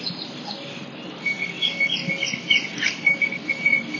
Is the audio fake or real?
real